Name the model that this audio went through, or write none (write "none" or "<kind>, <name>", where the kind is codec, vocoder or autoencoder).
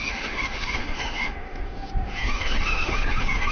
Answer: autoencoder, DAC-VAE